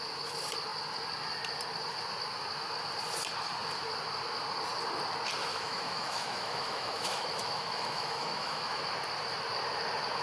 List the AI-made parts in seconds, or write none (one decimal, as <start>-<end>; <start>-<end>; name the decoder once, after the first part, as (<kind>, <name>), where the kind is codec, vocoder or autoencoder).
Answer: 5.5-8.8 (autoencoder, DAC-VAE)